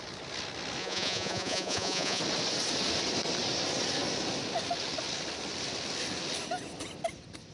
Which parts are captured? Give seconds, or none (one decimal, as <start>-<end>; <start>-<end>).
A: 0.0-0.8; 2.2-7.5